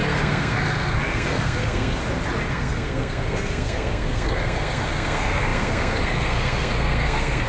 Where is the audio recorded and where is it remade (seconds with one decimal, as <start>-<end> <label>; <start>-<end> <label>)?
0.0-2.0 remade; 2.0-2.5 recorded; 2.5-7.5 remade